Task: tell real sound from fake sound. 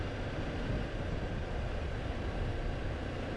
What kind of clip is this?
fake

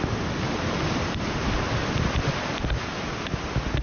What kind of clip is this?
real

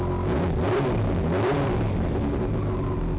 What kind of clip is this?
real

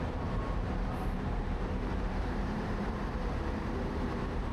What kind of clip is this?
fake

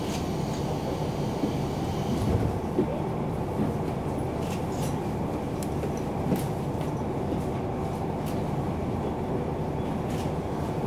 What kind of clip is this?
real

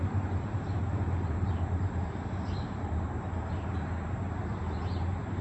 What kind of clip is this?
fake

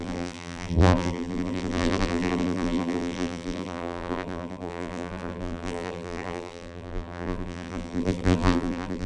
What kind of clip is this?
fake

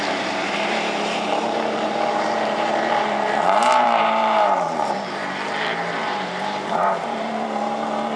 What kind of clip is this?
fake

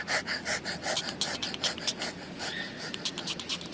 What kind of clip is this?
real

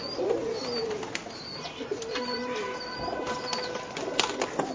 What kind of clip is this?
real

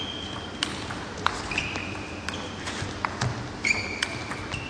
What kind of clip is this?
real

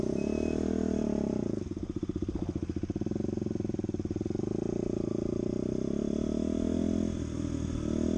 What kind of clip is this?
real